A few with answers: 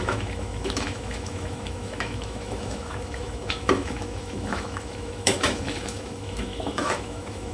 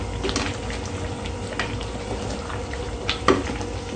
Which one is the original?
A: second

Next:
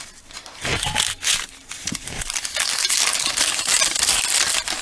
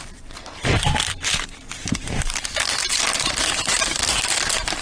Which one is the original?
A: first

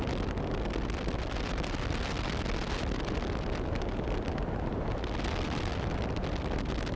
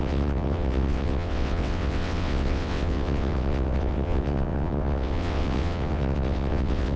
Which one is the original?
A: first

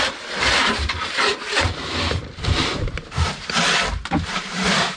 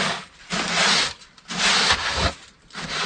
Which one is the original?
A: second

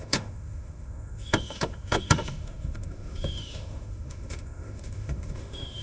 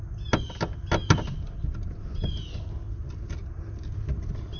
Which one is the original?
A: second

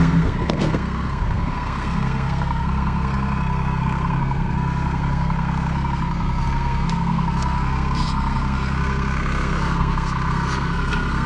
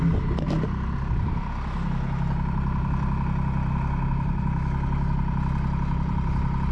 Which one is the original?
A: second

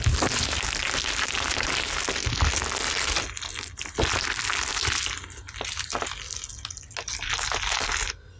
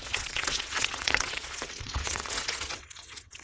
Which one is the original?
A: first